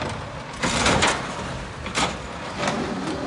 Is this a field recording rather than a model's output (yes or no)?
yes